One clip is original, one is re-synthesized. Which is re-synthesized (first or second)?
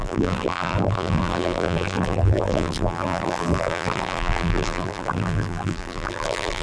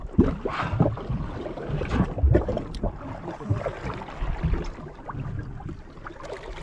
first